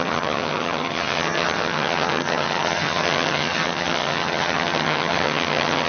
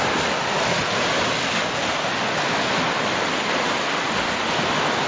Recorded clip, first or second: second